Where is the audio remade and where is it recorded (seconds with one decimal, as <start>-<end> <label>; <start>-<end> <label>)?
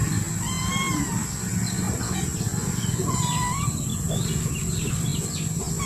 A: 0.0-5.9 recorded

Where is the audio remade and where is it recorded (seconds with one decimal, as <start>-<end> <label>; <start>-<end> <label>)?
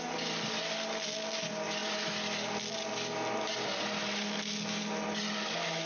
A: 0.0-5.9 recorded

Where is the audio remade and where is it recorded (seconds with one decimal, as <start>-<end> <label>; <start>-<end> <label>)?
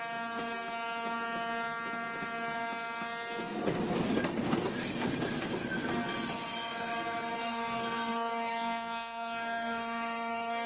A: 0.0-7.4 recorded; 7.4-10.7 remade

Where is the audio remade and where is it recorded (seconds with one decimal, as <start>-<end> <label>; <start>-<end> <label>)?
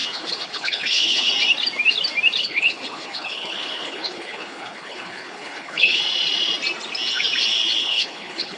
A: 0.0-1.3 remade; 1.3-2.4 recorded; 2.4-6.0 remade; 6.0-7.8 recorded; 7.8-8.6 remade